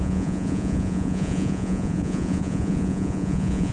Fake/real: fake